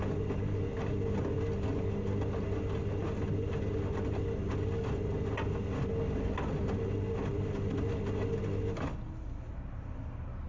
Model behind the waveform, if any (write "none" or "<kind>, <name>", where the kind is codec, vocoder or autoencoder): none